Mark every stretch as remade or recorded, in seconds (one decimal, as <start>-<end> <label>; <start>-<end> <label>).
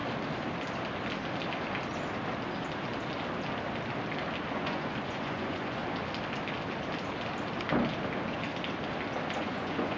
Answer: 0.0-4.5 recorded; 4.5-5.8 remade; 5.8-9.4 recorded; 9.4-10.0 remade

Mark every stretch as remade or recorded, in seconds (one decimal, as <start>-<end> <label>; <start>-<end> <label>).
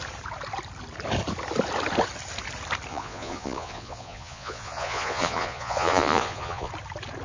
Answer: 0.0-2.9 recorded; 2.9-6.7 remade; 6.7-7.2 recorded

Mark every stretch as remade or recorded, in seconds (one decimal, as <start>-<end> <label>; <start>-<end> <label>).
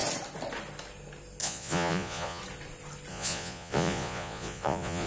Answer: 0.0-1.4 recorded; 1.4-2.4 remade; 2.4-3.1 recorded; 3.1-5.1 remade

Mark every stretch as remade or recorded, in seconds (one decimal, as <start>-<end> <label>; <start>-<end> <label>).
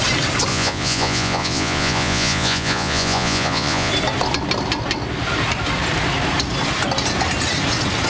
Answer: 0.0-0.5 recorded; 0.5-3.9 remade; 3.9-8.1 recorded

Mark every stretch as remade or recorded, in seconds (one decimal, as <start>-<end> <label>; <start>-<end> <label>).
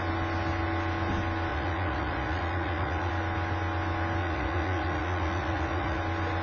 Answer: 0.0-1.5 recorded; 1.5-3.1 remade; 3.1-4.2 recorded; 4.2-6.0 remade; 6.0-6.4 recorded